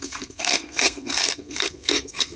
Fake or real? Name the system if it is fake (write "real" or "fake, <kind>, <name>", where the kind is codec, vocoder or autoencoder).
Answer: fake, codec, SNAC